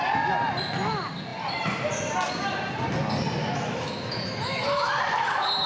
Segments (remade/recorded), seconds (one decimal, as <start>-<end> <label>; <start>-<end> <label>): 0.0-3.4 recorded; 3.4-4.9 remade; 4.9-5.7 recorded